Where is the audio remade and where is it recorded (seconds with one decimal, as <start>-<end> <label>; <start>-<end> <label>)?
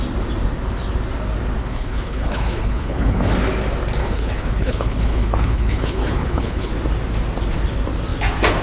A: 0.0-1.6 recorded; 1.6-3.3 remade; 3.3-4.0 recorded; 4.0-6.7 remade; 6.7-8.6 recorded